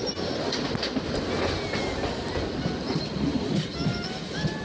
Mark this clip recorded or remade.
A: recorded